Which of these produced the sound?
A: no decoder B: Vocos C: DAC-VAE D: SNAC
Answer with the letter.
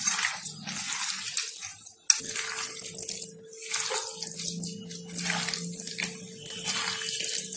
A